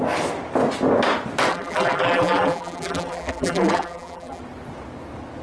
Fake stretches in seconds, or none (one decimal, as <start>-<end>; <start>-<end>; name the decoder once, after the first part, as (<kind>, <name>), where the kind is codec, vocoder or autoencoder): 1.5-4.4 (vocoder, BigVGAN v2)